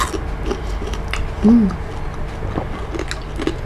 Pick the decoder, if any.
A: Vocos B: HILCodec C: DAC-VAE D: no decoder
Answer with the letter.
D